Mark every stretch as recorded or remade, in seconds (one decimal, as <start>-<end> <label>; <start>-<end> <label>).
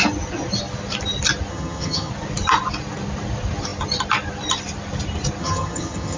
0.0-1.5 recorded; 1.5-2.1 remade; 2.1-5.4 recorded; 5.4-6.2 remade